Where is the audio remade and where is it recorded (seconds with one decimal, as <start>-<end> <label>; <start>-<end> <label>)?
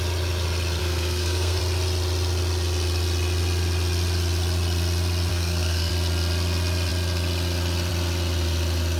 0.0-0.8 recorded; 0.8-1.6 remade; 1.6-5.3 recorded; 5.3-5.9 remade; 5.9-9.0 recorded